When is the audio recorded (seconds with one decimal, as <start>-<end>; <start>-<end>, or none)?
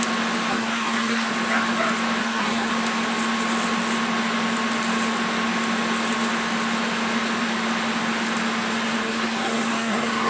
0.0-0.5; 1.3-2.2; 2.7-9.0